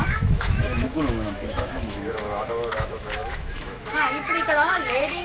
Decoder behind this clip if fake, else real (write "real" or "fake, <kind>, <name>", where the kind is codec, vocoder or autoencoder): fake, autoencoder, DAC-VAE